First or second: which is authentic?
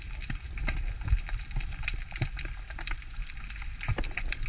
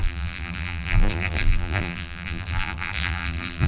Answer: first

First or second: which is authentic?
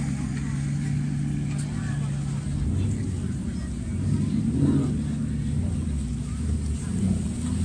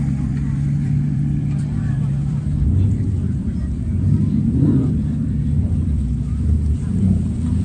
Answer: first